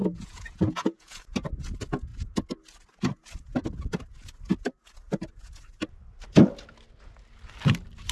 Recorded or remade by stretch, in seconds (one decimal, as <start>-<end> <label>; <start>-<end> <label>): 0.0-1.2 remade; 1.2-8.1 recorded